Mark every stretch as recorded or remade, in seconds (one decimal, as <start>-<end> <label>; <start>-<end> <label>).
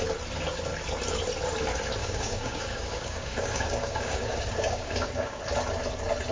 0.0-2.0 recorded; 2.0-5.4 remade; 5.4-6.3 recorded